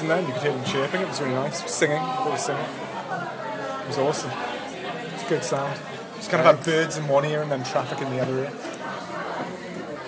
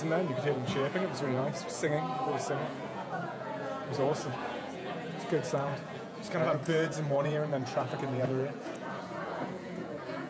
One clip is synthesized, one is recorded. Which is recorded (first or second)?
first